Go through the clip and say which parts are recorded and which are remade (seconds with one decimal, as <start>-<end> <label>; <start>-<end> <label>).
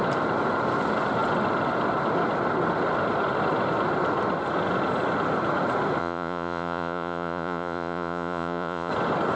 0.0-6.0 recorded; 6.0-8.9 remade; 8.9-9.4 recorded